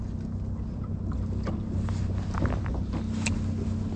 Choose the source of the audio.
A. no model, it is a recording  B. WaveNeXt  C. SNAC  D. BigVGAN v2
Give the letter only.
A